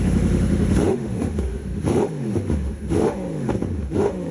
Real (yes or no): no